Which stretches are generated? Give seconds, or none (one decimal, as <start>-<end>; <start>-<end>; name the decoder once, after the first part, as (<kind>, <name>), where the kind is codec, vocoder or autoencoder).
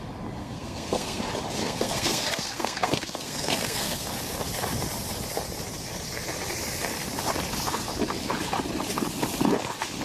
0.4-1.2 (codec, SNAC); 1.6-4.1